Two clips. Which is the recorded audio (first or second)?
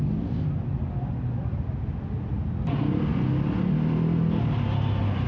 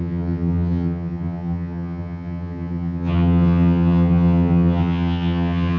first